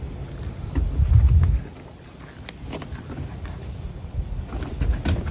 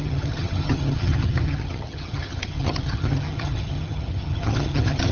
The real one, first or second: first